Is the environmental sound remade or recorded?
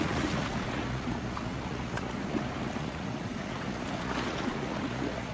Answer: remade